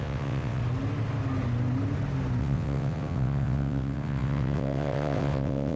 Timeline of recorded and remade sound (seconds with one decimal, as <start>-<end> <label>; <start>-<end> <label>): 0.0-0.6 remade; 0.6-2.4 recorded; 2.4-5.8 remade